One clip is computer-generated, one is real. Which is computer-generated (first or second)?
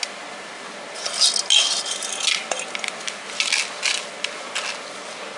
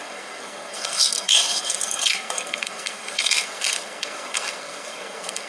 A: second